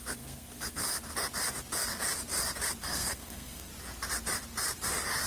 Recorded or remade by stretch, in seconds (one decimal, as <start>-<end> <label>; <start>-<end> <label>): 0.0-0.8 remade; 0.8-2.8 recorded; 2.8-3.7 remade; 3.7-5.3 recorded